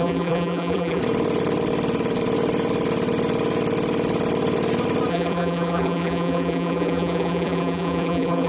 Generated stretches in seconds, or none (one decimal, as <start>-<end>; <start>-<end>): 0.0-1.0; 5.1-8.5